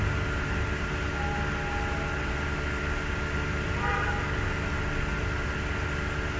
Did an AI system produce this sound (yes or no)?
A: no